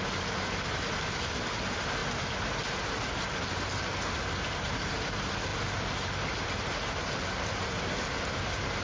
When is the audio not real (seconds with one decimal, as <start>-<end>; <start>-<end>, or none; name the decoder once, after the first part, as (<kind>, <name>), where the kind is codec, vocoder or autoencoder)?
none